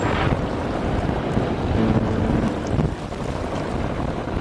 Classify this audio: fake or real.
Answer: real